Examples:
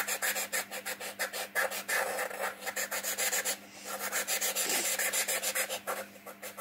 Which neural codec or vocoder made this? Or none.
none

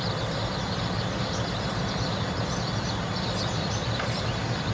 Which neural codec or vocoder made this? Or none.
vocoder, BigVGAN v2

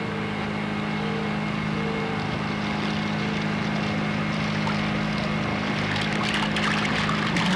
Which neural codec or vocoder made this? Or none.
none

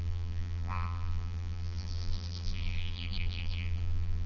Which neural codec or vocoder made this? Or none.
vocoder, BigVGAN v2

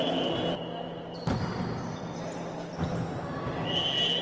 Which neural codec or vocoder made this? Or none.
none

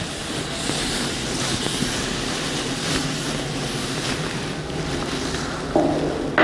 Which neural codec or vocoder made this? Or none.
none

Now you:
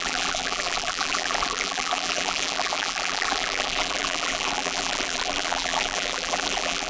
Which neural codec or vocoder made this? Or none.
vocoder, BigVGAN v2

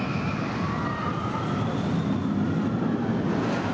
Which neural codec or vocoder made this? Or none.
none